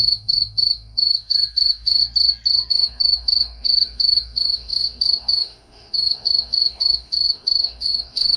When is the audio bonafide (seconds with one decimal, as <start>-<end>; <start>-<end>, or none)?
2.0-2.7